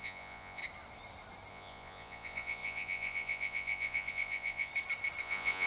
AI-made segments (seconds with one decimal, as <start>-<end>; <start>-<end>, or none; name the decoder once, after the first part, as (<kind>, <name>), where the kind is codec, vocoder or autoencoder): 0.0-0.6 (vocoder, Vocos); 1.5-4.7; 5.2-5.7